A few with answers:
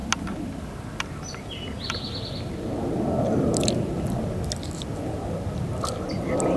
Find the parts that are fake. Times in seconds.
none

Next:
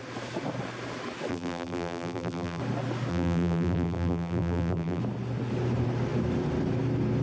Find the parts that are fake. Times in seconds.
1.3-2.6; 3.1-5.0